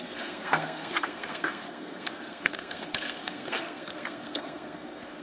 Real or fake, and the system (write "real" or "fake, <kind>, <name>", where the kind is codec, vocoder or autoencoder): fake, codec, SNAC